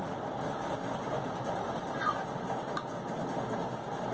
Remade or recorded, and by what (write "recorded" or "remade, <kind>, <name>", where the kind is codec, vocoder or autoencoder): recorded